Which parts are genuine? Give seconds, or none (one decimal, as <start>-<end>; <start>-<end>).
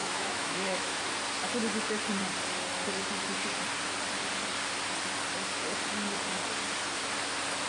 1.0-7.7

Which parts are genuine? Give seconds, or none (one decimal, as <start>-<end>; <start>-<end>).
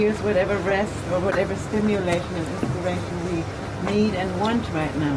0.0-5.2